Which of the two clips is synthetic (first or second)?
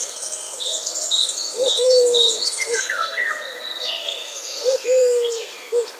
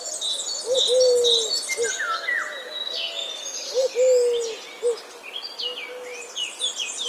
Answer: first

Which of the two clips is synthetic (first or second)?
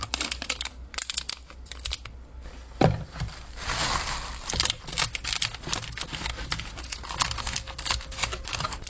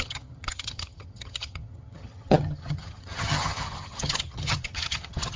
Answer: second